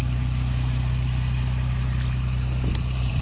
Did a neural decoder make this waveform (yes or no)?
yes